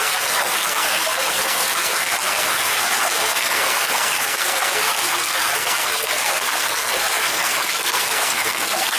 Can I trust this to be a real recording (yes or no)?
no